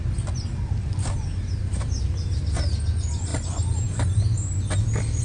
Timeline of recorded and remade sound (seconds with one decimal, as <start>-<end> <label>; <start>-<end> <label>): 0.0-5.2 recorded